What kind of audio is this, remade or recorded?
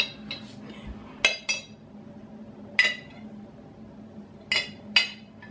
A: recorded